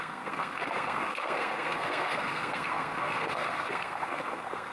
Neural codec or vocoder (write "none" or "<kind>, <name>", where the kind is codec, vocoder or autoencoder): codec, SNAC